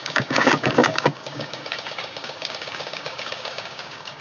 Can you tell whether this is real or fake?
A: fake